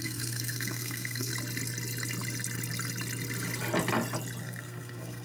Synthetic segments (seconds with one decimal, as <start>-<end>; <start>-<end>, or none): 0.0-1.3; 4.4-5.2